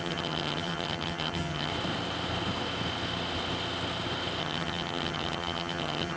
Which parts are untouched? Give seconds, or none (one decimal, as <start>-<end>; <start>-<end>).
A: 1.7-4.4